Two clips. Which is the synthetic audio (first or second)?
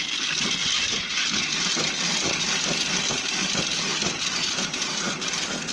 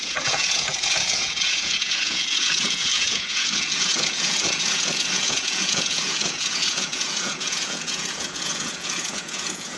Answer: second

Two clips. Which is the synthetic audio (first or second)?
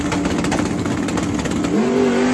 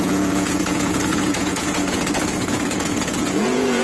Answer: second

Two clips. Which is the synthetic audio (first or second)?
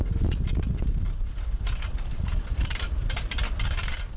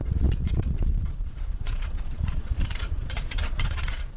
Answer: second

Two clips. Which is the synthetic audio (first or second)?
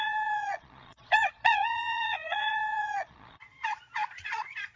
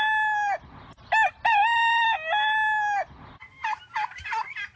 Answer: first